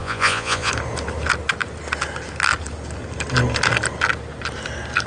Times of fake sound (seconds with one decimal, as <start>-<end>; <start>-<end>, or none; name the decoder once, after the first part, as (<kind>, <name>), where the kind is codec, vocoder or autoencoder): 0.0-0.7 (vocoder, Vocos)